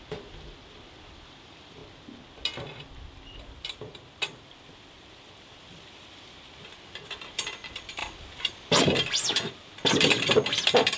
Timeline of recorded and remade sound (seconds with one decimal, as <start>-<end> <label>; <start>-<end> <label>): 0.0-1.8 remade; 1.8-3.4 recorded; 3.4-11.0 remade